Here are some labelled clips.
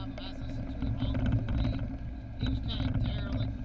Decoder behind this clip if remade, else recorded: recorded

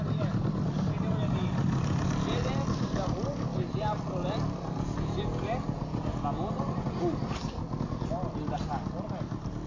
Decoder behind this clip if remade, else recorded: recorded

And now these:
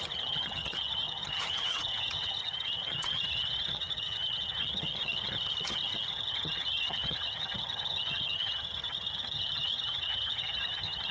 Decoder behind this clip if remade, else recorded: remade, vocoder, HiFi-GAN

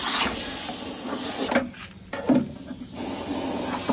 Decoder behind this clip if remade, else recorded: recorded